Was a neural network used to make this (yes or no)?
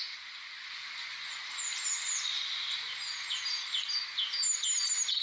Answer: no